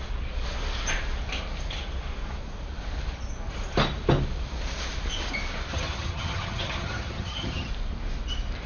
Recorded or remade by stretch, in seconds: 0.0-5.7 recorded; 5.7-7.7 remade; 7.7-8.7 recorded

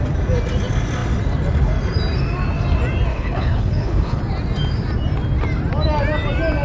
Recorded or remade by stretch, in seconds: 0.0-3.1 recorded; 3.1-4.2 remade; 4.2-6.6 recorded

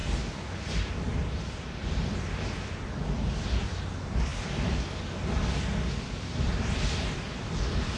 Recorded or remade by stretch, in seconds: 0.0-0.6 recorded; 0.6-1.8 remade; 1.8-2.4 recorded; 2.4-4.3 remade; 4.3-5.9 recorded; 5.9-8.0 remade

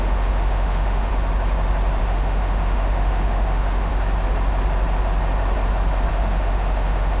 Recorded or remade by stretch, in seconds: 0.0-1.1 remade; 1.1-2.0 recorded; 2.0-3.9 remade; 3.9-6.1 recorded; 6.1-7.2 remade

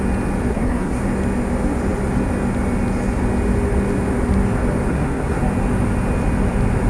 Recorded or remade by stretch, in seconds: 0.0-0.5 recorded; 0.5-1.0 remade; 1.0-4.9 recorded; 4.9-5.4 remade; 5.4-6.9 recorded

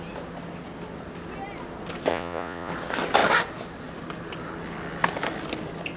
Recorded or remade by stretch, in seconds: 0.0-2.1 recorded; 2.1-2.7 remade; 2.7-6.0 recorded

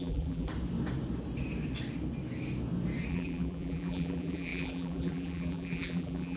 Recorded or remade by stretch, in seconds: 0.0-0.5 remade; 0.5-3.1 recorded; 3.1-6.4 remade